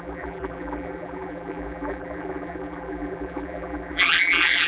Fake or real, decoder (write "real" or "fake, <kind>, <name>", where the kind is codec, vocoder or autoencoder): fake, vocoder, BigVGAN v2